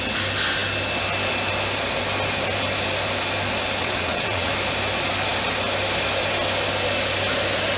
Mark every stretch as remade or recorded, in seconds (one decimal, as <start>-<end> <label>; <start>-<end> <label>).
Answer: 0.0-3.8 recorded; 3.8-4.5 remade; 4.5-7.8 recorded